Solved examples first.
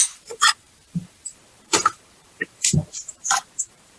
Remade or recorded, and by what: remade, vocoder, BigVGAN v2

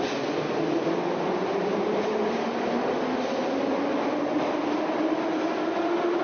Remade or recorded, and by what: recorded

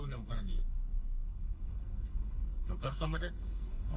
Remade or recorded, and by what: remade, codec, SNAC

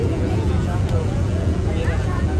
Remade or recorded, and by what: remade, vocoder, Vocos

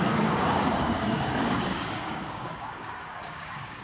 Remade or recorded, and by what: remade, codec, DAC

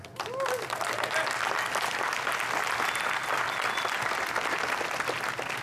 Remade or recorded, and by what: recorded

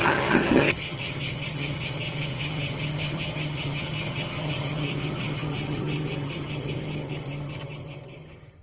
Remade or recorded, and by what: remade, vocoder, HiFi-GAN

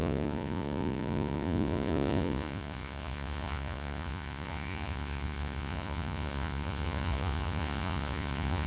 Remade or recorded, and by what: remade, vocoder, Vocos